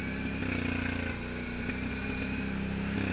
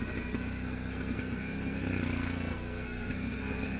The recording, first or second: first